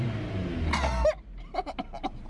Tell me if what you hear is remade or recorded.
recorded